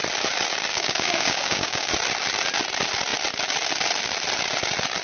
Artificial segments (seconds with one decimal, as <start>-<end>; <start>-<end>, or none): 0.7-1.9